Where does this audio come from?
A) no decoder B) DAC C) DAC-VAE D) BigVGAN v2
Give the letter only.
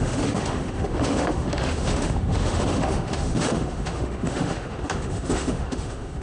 C